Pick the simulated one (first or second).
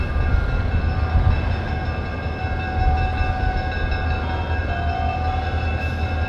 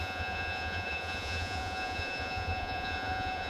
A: second